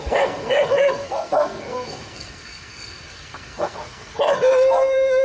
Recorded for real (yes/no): no